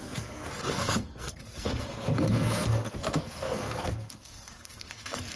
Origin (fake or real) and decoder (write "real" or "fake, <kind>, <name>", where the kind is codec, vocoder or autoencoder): fake, codec, SNAC